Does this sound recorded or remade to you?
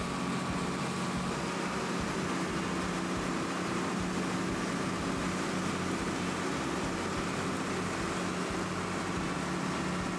recorded